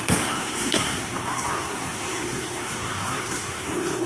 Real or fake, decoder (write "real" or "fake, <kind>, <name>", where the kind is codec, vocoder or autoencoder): fake, codec, SNAC